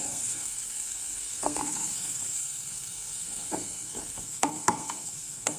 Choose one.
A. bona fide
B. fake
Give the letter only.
B